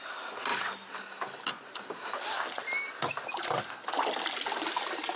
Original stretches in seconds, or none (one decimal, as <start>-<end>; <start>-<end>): 0.0-5.2